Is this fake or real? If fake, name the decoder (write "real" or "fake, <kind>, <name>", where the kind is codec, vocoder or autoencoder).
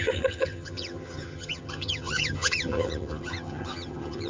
fake, vocoder, HiFi-GAN